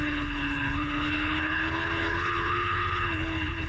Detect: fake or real fake